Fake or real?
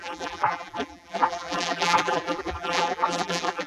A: fake